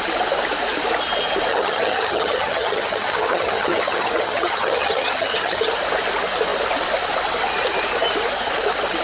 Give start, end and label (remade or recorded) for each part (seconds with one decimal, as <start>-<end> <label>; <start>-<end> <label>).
0.0-1.5 recorded; 1.5-5.7 remade; 5.7-9.0 recorded